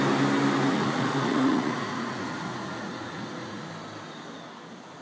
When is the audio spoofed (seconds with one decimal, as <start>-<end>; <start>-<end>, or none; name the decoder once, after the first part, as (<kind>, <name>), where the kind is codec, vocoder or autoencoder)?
0.7-3.7 (vocoder, Vocos)